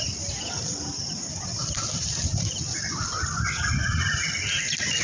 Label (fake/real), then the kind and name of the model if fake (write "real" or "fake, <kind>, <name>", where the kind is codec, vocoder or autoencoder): real